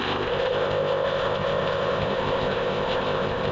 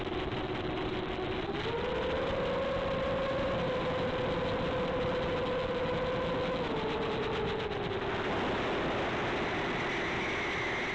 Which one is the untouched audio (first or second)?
second